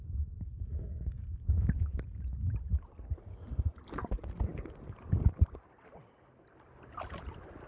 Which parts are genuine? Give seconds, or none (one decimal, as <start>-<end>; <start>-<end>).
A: 0.0-7.7